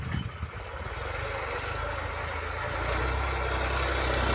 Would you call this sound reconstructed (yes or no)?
no